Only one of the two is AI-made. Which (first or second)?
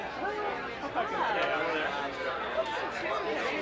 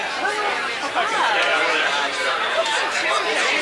second